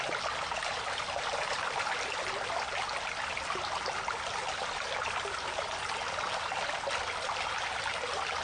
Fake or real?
real